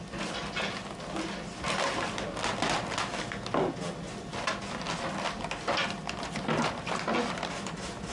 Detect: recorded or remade recorded